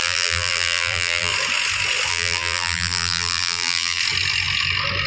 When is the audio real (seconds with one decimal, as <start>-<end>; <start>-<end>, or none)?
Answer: 1.3-2.1; 4.0-5.1